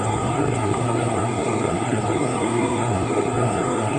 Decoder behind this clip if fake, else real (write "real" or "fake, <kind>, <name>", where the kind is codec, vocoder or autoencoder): fake, codec, SNAC